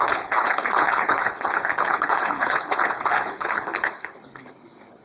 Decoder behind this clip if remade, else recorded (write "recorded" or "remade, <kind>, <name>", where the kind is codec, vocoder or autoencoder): remade, codec, HILCodec